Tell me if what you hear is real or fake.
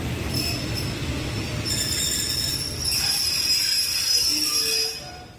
real